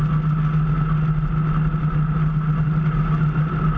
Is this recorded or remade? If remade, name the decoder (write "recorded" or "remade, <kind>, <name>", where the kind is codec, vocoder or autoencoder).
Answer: recorded